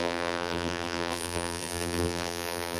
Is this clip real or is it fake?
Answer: fake